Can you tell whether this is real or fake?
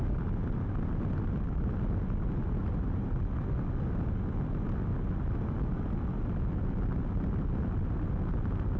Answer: real